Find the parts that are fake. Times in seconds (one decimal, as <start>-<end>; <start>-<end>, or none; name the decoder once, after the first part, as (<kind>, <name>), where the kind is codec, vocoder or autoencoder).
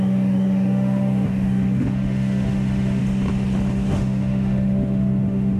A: 0.0-3.0 (autoencoder, DAC-VAE); 3.7-5.6